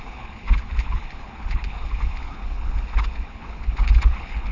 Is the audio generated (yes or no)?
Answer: yes